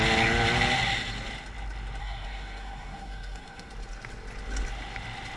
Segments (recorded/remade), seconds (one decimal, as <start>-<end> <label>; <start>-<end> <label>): 0.0-2.0 recorded; 2.0-3.7 remade; 3.7-5.4 recorded